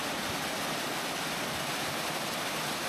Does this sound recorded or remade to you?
remade